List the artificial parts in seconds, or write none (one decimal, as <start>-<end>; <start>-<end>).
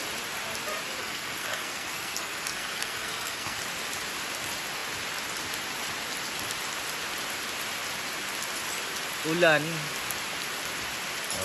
1.0-3.6